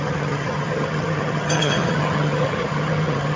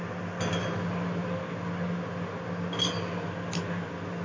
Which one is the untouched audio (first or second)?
second